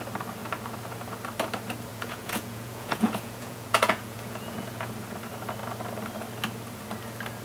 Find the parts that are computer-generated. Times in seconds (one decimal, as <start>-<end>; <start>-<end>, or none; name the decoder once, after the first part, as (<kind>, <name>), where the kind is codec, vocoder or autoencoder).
1.9-4.9 (vocoder, Vocos)